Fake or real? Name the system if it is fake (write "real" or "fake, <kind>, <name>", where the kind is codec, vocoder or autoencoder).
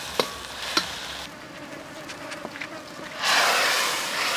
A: real